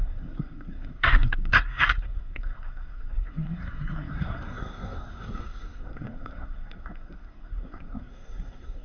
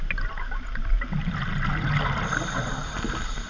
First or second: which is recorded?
second